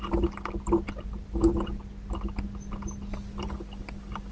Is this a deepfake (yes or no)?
no